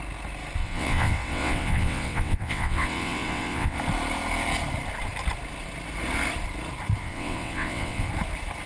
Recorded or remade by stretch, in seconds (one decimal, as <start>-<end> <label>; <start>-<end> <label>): 0.0-0.6 recorded; 0.6-3.8 remade; 3.8-7.0 recorded; 7.0-8.1 remade; 8.1-8.7 recorded